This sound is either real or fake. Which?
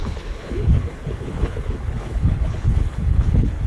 fake